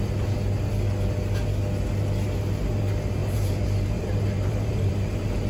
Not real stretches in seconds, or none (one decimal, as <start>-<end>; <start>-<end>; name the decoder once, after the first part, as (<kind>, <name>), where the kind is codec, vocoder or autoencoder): 3.2-4.9 (vocoder, BigVGAN v2)